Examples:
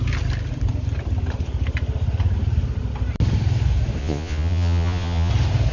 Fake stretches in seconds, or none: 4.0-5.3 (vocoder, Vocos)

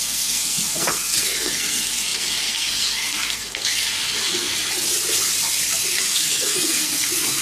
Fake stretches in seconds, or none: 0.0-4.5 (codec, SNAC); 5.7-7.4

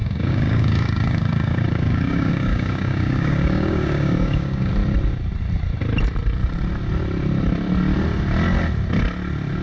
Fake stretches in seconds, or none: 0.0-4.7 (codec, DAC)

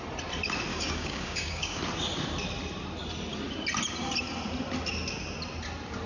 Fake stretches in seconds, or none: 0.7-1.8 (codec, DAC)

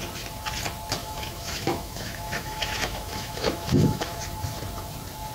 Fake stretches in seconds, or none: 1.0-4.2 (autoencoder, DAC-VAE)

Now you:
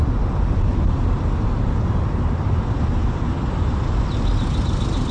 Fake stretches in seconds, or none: none

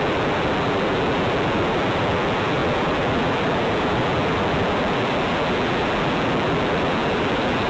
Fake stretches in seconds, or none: 0.0-7.7 (vocoder, BigVGAN v2)